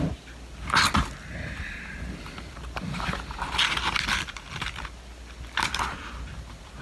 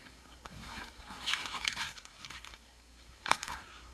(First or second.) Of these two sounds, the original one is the first